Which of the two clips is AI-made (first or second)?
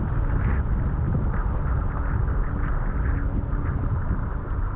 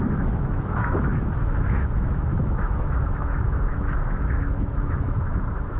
second